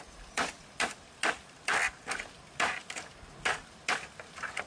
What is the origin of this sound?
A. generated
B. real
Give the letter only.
B